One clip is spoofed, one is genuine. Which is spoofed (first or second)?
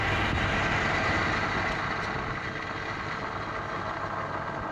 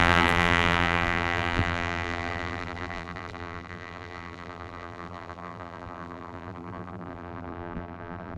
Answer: second